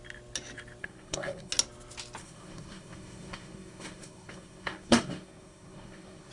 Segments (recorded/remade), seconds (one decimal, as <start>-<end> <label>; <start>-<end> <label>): 0.0-0.8 recorded; 0.8-1.5 remade; 1.5-2.2 recorded; 2.2-6.3 remade